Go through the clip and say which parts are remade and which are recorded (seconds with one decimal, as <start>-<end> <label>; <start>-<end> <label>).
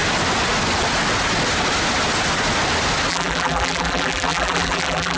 0.0-3.1 recorded; 3.1-5.2 remade